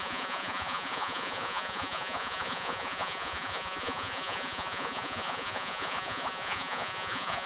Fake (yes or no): yes